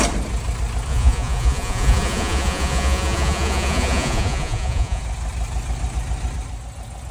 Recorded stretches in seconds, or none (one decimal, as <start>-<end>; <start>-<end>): 0.0-0.9; 5.0-7.1